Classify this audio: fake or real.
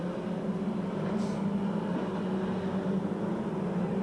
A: real